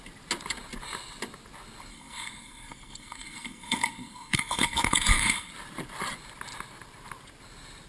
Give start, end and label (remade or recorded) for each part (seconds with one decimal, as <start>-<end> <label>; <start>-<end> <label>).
0.0-1.9 recorded; 1.9-5.5 remade; 5.5-7.9 recorded